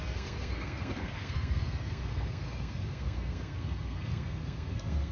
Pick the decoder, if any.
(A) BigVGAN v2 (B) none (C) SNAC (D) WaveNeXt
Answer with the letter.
C